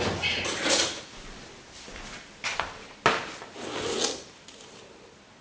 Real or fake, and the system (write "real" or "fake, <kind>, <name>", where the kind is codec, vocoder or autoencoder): real